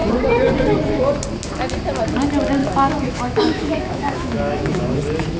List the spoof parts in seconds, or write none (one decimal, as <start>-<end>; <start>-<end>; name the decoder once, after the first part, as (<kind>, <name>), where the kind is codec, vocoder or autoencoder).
2.6-5.0 (autoencoder, DAC-VAE)